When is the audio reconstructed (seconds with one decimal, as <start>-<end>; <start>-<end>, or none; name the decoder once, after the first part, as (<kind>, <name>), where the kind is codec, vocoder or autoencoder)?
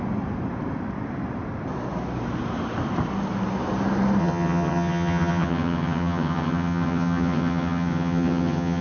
4.2-8.8 (vocoder, HiFi-GAN)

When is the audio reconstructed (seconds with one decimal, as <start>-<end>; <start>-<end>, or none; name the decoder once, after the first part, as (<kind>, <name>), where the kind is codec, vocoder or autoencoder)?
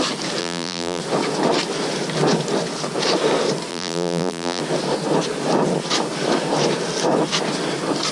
0.4-1.0 (vocoder, BigVGAN v2); 3.7-4.6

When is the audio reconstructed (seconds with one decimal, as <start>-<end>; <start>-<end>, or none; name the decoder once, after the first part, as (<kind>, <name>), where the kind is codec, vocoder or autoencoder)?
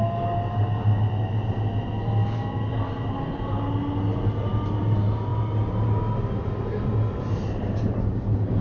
none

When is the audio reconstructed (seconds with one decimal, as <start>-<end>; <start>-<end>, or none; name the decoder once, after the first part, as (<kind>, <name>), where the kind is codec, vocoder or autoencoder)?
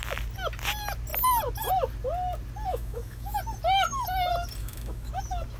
2.7-3.4 (autoencoder, DAC-VAE); 4.6-5.1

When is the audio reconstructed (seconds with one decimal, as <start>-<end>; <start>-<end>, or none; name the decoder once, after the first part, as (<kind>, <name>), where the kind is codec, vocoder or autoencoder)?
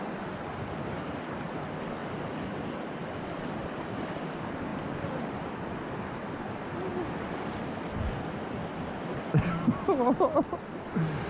none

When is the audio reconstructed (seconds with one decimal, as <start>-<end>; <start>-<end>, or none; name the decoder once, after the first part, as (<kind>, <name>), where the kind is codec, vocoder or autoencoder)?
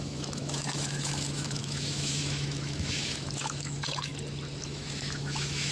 0.0-4.1 (autoencoder, DAC-VAE); 4.6-5.7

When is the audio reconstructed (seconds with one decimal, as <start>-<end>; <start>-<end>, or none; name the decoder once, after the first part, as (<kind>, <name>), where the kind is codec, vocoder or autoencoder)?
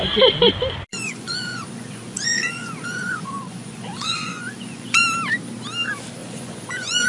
0.9-5.0 (vocoder, Vocos); 6.2-7.1